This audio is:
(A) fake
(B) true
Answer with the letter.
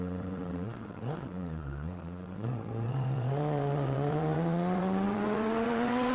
A